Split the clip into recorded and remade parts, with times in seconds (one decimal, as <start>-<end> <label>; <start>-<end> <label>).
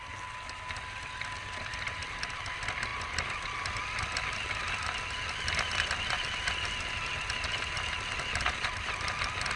0.0-9.6 recorded